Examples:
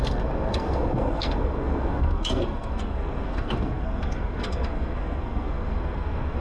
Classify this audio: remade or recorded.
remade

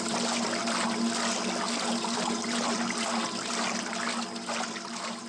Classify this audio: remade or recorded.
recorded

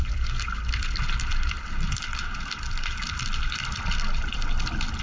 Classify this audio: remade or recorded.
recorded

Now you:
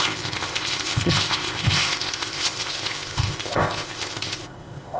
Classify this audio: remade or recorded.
remade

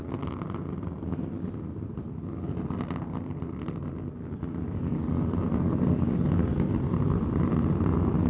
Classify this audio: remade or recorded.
remade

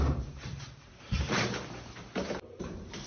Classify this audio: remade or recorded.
remade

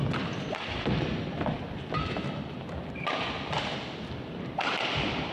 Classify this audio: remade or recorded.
recorded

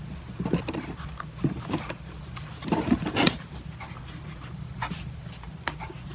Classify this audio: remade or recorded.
recorded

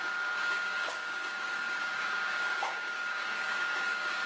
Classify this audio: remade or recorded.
remade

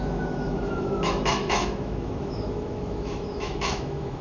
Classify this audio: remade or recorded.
remade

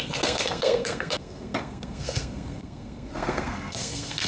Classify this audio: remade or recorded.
remade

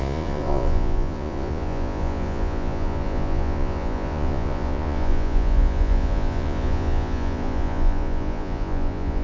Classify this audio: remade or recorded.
remade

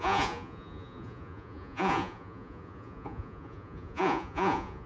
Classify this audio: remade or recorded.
remade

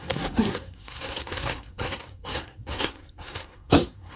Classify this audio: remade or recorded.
remade